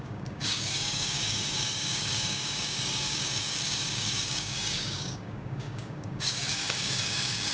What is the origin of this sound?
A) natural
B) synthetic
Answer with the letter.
B